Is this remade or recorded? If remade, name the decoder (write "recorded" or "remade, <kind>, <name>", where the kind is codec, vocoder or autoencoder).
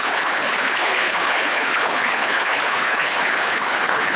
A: remade, codec, HILCodec